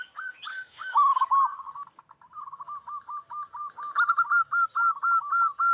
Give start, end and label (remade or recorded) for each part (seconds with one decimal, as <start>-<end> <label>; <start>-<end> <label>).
0.0-0.5 recorded; 0.5-1.2 remade; 1.2-5.7 recorded